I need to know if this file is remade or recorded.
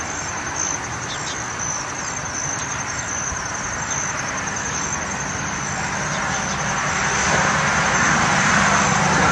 recorded